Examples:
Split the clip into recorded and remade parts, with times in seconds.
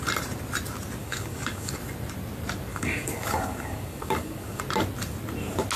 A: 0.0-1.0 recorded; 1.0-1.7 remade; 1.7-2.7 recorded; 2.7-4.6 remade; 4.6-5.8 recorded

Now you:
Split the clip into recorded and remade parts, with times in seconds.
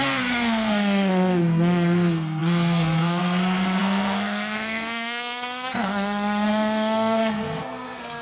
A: 0.0-8.2 remade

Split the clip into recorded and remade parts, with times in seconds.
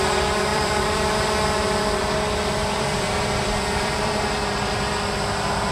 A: 0.0-0.5 recorded; 0.5-1.2 remade; 1.2-2.6 recorded; 2.6-4.1 remade; 4.1-5.7 recorded